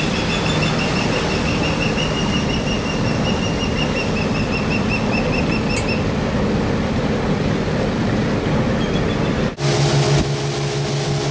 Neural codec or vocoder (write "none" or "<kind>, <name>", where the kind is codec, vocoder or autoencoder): none